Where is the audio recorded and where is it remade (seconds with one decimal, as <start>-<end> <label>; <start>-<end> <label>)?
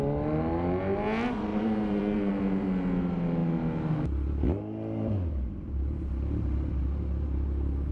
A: 0.0-1.5 recorded; 1.5-2.3 remade; 2.3-7.9 recorded